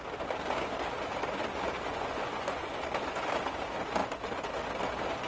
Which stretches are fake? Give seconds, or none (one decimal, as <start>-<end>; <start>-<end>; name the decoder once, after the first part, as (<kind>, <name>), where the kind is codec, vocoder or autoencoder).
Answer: 1.9-2.7 (vocoder, Vocos)